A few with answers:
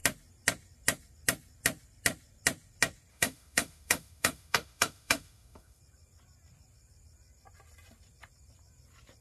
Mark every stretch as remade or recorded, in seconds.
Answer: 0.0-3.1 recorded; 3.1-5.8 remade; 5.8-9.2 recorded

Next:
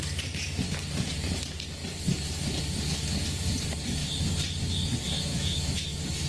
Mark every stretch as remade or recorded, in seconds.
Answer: 0.0-5.3 recorded; 5.3-6.3 remade

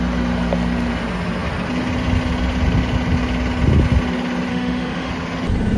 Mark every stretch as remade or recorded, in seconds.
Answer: 0.0-4.5 recorded; 4.5-5.1 remade; 5.1-5.8 recorded

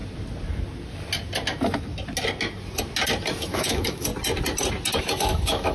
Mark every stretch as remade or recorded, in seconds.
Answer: 0.0-3.4 recorded; 3.4-4.1 remade; 4.1-5.0 recorded; 5.0-5.7 remade

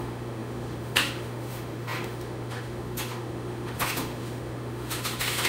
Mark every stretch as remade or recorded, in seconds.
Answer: 0.0-5.5 remade

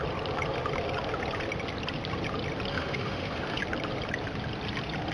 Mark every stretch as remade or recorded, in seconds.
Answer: 0.0-2.7 recorded; 2.7-3.6 remade; 3.6-5.1 recorded

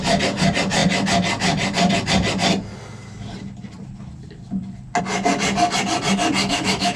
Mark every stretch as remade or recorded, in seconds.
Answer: 0.0-6.4 recorded; 6.4-7.0 remade

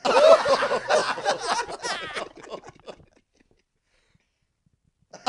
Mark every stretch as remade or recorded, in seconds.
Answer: 0.0-5.3 recorded